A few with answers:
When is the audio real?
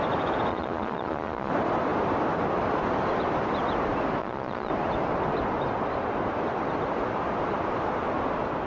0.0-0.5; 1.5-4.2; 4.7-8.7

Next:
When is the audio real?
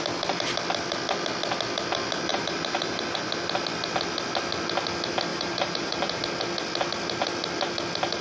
0.0-2.3; 3.0-5.3; 6.2-8.2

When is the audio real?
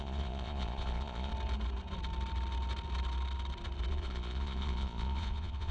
1.3-3.9